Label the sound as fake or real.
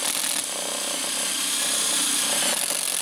real